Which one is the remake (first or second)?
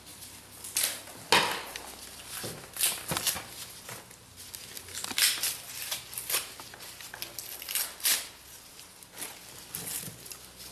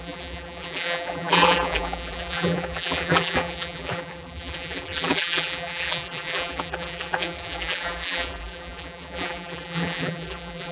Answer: second